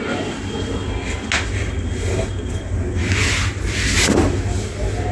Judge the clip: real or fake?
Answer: real